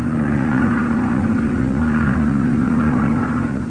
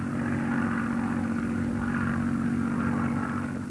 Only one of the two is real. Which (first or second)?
second